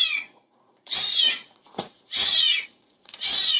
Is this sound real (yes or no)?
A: no